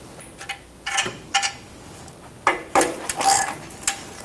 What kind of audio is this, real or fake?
real